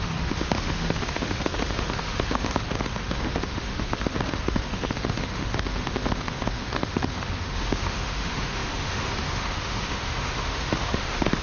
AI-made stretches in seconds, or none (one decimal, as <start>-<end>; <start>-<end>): 0.0-11.4